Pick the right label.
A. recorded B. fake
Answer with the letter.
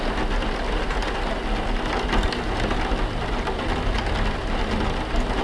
A